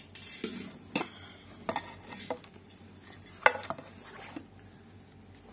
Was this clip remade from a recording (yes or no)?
no